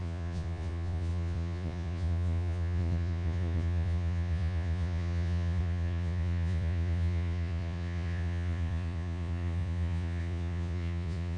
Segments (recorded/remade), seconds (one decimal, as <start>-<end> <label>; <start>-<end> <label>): 0.0-11.4 remade